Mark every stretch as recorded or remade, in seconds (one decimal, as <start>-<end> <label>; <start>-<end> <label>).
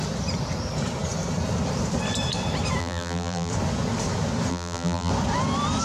0.0-2.8 recorded; 2.8-3.5 remade; 3.5-4.5 recorded; 4.5-5.1 remade; 5.1-5.8 recorded